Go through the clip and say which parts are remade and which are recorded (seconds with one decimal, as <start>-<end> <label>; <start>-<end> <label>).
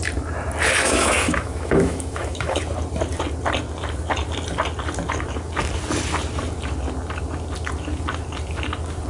0.0-0.8 recorded; 0.8-2.6 remade; 2.6-9.1 recorded